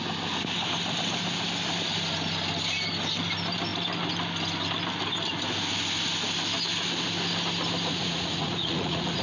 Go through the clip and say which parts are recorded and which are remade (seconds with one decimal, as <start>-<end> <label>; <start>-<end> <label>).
0.0-7.9 recorded; 7.9-9.2 remade